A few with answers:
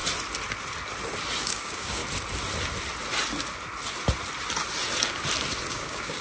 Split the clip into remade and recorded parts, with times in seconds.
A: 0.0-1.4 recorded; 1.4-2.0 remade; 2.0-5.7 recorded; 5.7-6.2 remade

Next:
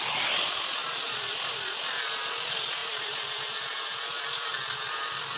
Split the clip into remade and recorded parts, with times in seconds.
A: 0.0-5.4 recorded

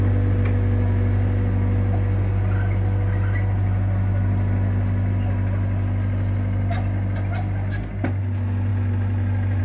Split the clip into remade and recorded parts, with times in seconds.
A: 0.0-9.6 recorded

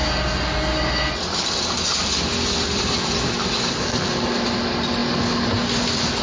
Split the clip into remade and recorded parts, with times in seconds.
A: 0.0-6.2 recorded

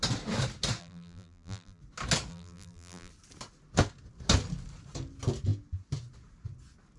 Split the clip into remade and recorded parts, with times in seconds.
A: 0.0-0.8 recorded; 0.8-1.8 remade; 1.8-2.3 recorded; 2.3-3.1 remade; 3.1-7.0 recorded

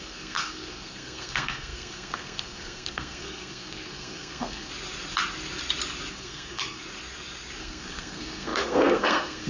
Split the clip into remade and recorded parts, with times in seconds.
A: 0.0-4.7 remade; 4.7-6.1 recorded; 6.1-6.8 remade; 6.8-7.6 recorded; 7.6-9.5 remade

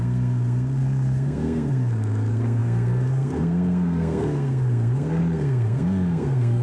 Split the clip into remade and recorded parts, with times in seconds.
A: 0.0-6.6 remade